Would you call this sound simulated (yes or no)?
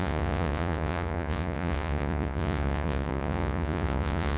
yes